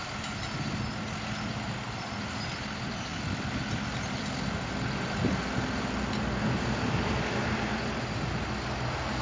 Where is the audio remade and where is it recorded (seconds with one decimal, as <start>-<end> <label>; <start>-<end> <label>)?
0.0-9.2 recorded